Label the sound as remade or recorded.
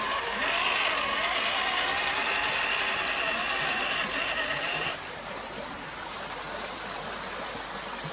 recorded